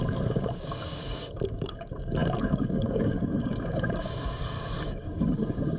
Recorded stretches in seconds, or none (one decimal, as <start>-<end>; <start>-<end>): none